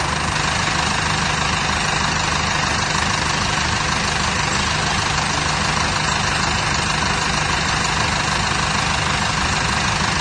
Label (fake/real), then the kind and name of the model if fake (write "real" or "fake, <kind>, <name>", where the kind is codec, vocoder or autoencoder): real